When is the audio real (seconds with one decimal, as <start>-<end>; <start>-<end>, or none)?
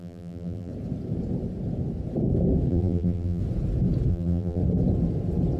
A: 0.7-2.7; 3.4-4.1; 4.6-5.6